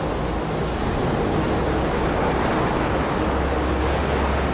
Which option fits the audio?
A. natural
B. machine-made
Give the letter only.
A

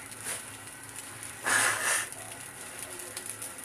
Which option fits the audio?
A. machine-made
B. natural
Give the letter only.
B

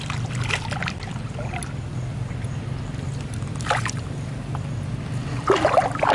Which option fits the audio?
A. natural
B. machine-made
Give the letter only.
A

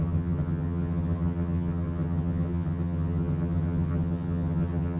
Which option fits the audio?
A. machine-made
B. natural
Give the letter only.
A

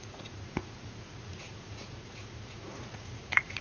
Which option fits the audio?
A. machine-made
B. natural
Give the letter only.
A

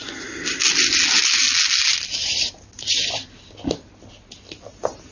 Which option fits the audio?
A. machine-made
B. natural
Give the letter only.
B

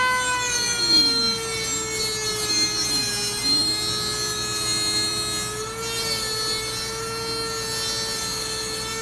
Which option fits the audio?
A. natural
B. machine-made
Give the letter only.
A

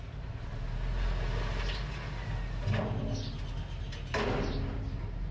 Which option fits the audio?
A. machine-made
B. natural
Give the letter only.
B